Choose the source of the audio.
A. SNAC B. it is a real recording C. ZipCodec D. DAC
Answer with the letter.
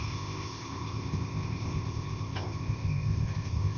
C